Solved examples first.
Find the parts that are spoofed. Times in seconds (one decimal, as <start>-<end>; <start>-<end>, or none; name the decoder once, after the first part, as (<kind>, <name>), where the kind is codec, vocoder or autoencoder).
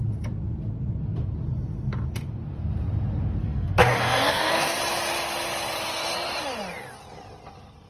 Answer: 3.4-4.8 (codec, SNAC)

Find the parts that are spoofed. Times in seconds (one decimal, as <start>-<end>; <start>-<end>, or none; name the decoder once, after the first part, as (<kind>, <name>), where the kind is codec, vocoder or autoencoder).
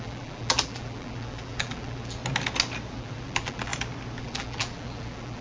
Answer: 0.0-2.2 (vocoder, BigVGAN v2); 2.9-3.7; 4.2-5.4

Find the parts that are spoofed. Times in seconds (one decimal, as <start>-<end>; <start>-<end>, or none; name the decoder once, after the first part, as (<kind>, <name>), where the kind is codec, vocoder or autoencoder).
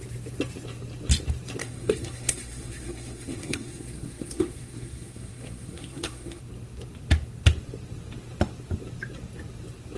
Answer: 1.6-6.4 (codec, SNAC)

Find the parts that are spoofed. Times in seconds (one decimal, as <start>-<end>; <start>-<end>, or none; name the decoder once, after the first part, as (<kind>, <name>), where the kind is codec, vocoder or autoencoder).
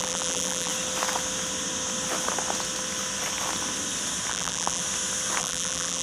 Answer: 0.0-0.7 (vocoder, BigVGAN v2); 4.3-4.8; 5.4-6.0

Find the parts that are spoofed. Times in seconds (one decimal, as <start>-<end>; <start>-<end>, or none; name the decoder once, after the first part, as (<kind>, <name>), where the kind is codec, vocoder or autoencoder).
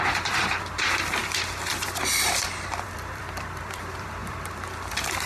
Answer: 0.0-5.3 (vocoder, BigVGAN v2)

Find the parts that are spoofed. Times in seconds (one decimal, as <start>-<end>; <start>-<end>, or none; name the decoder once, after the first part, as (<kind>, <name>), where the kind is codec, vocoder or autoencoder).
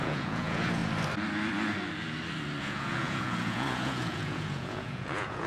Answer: 0.0-0.8 (vocoder, Vocos); 2.6-5.5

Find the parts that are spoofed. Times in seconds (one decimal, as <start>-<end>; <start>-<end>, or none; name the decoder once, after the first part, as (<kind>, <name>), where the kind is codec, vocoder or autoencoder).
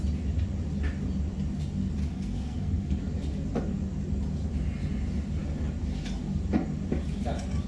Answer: 2.1-3.0 (codec, SNAC)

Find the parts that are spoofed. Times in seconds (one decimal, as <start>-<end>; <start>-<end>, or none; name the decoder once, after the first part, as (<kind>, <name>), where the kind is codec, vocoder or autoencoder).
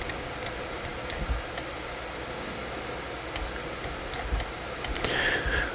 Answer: none